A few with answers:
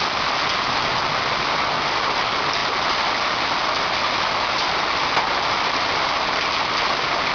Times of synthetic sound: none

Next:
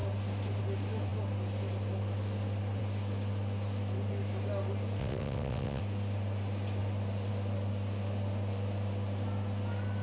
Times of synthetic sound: 5.0-5.8 (vocoder, WaveNeXt)